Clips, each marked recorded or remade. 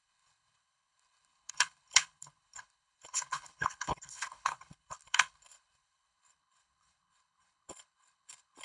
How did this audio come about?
remade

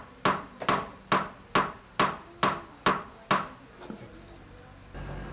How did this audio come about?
recorded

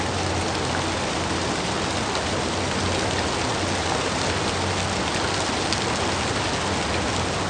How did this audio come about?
recorded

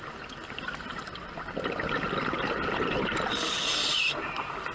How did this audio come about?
recorded